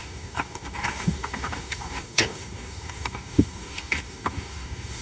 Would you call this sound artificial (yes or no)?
yes